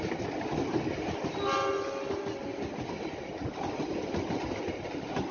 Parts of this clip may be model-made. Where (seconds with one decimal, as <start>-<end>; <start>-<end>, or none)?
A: none